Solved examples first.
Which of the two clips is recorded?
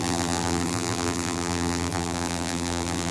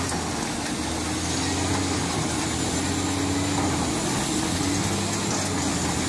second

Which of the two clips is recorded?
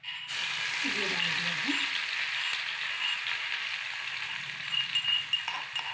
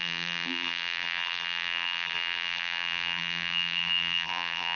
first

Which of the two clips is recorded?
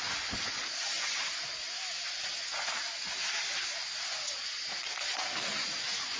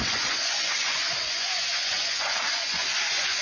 first